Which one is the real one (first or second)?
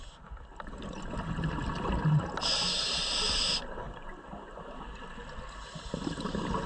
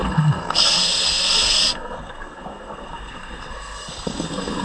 first